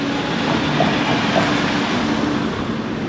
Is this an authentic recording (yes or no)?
yes